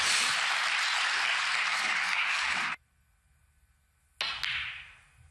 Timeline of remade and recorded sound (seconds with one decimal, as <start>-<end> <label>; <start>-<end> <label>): 0.0-1.7 recorded; 1.7-2.6 remade; 2.6-5.3 recorded